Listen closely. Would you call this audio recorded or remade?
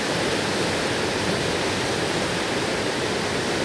recorded